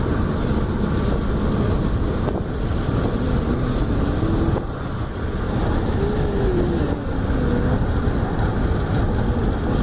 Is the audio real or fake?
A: real